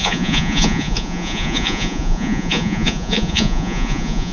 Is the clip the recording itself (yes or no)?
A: no